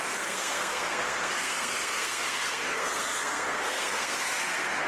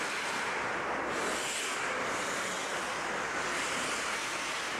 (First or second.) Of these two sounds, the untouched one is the second